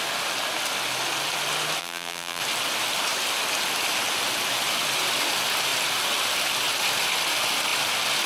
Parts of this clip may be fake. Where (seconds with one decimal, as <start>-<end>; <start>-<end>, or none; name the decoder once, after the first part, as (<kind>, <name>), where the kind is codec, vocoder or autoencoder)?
1.8-2.4 (vocoder, BigVGAN v2)